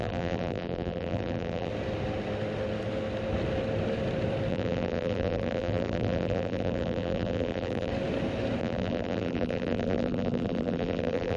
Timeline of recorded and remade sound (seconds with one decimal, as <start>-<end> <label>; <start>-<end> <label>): 0.0-1.7 remade; 1.7-4.5 recorded; 4.5-7.9 remade; 7.9-8.6 recorded; 8.6-11.4 remade